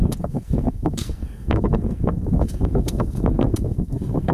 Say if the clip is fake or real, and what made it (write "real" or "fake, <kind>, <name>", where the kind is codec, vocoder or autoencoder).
fake, codec, SNAC